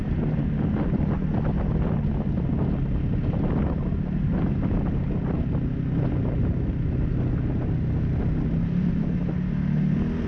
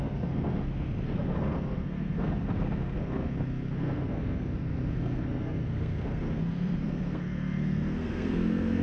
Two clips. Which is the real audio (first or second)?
first